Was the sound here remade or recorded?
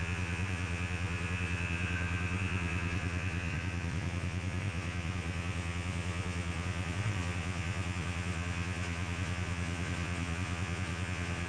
remade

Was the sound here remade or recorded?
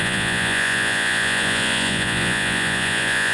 remade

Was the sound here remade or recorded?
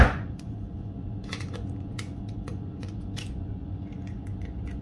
remade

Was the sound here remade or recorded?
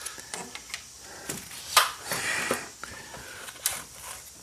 recorded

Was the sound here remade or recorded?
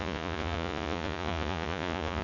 remade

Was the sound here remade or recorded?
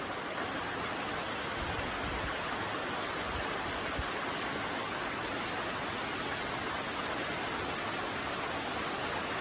recorded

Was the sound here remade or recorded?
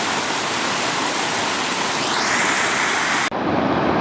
recorded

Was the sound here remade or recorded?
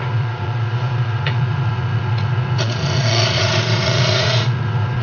remade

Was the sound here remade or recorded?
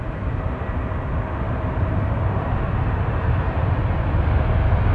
recorded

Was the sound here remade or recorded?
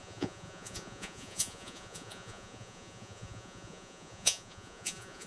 remade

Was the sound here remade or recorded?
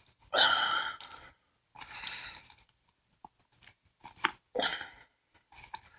recorded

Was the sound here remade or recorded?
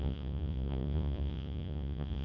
remade